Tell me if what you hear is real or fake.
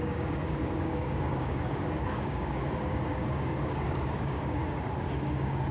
fake